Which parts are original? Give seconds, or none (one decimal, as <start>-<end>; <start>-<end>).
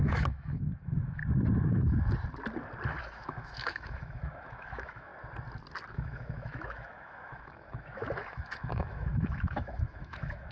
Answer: 1.2-3.0; 5.1-5.9